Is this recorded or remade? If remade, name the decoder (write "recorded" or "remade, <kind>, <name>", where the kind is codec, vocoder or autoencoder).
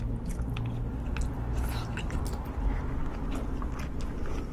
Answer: recorded